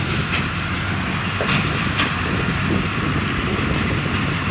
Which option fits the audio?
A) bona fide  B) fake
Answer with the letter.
B